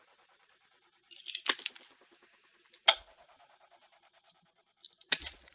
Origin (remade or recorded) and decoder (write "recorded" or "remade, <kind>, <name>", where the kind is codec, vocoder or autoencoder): recorded